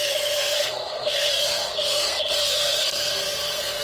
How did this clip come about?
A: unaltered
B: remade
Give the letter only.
B